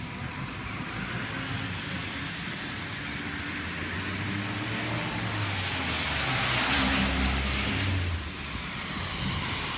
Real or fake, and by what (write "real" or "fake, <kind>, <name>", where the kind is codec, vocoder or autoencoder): real